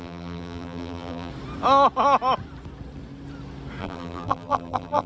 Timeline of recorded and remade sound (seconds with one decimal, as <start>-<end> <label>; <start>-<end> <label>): 0.0-1.3 remade; 1.3-3.8 recorded; 3.8-5.1 remade